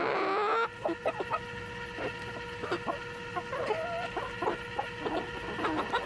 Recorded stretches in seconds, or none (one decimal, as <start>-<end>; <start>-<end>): 0.0-6.1